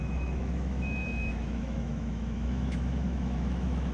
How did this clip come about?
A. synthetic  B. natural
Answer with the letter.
A